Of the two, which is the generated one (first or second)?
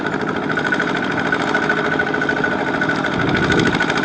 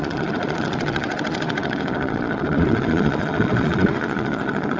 second